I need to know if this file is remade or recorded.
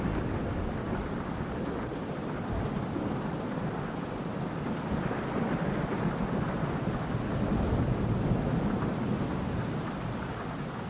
recorded